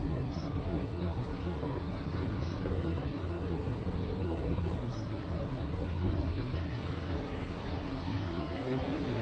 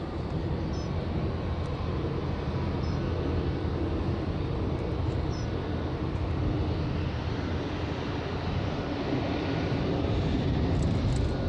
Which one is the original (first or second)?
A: second